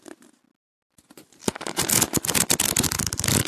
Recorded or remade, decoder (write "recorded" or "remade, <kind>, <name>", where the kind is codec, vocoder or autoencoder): recorded